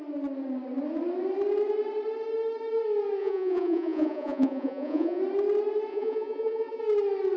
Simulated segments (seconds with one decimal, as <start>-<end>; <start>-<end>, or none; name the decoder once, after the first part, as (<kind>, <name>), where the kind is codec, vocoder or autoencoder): 3.2-5.2 (vocoder, Vocos); 5.9-6.8